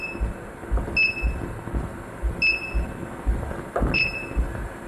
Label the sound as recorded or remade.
recorded